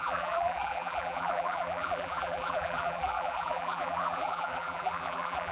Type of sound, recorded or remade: remade